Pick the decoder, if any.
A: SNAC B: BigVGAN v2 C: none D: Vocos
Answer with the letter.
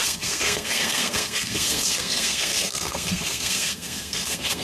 A